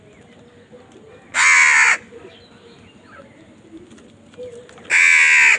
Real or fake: real